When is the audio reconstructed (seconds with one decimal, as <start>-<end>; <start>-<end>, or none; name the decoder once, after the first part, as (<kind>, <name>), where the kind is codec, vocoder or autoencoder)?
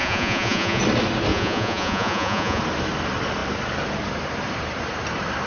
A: 0.0-0.8 (vocoder, Vocos); 1.3-2.6